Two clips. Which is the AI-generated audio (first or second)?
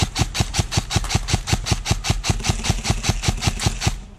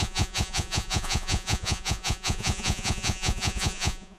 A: second